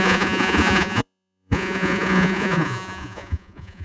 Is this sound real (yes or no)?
no